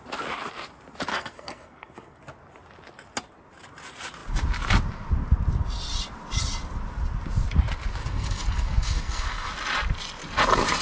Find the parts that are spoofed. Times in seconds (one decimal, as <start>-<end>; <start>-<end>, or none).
1.1-2.2; 8.0-9.5